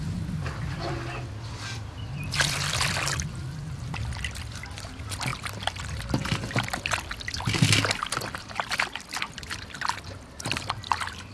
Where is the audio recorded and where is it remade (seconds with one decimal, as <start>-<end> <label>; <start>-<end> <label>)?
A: 0.0-11.3 recorded